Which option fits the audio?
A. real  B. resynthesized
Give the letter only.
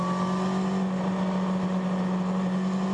A